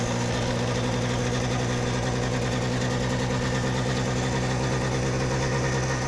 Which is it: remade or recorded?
recorded